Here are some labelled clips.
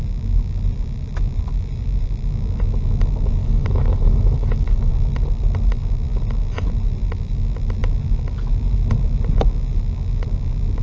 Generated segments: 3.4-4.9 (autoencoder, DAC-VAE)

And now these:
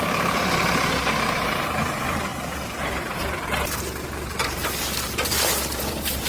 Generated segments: 0.0-6.3 (vocoder, BigVGAN v2)

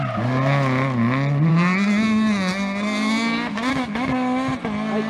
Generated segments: 1.5-3.7 (codec, SNAC)

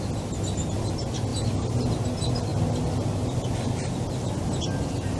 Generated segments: none

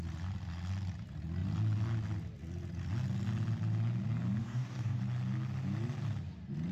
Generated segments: 4.4-5.0 (codec, DAC)